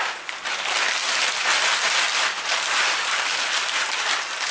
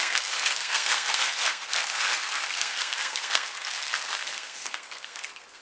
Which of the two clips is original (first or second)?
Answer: first